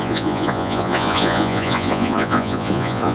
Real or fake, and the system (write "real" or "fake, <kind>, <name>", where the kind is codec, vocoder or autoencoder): fake, vocoder, Vocos